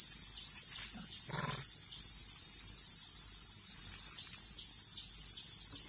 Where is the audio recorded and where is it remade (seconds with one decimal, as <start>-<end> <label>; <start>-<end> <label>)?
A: 0.0-5.9 recorded